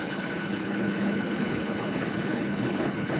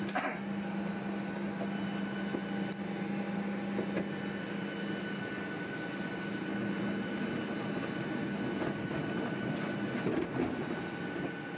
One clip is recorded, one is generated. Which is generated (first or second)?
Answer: first